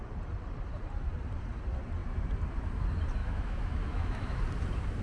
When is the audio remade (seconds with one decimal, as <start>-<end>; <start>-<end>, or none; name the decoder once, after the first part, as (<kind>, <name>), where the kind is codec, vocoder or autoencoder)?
3.2-4.4 (autoencoder, DAC-VAE)